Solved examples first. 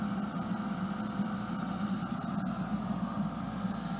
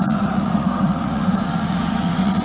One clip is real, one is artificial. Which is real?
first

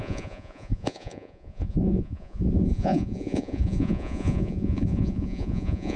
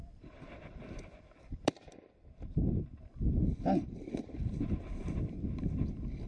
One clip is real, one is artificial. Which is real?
second